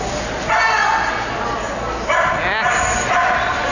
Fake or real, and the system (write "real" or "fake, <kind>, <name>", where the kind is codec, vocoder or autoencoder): real